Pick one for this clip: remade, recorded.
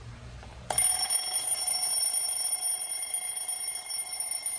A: recorded